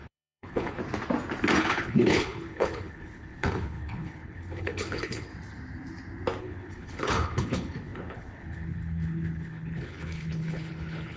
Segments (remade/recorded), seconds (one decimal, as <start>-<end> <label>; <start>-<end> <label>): 0.0-0.8 remade; 0.8-1.6 recorded; 1.6-5.3 remade; 5.3-6.4 recorded; 6.4-11.2 remade